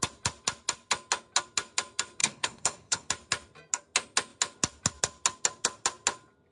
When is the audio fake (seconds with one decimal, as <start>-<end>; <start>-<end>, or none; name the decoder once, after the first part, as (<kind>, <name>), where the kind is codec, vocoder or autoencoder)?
2.2-3.1 (codec, HILCodec)